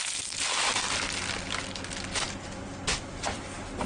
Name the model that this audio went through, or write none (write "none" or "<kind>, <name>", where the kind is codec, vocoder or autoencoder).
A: none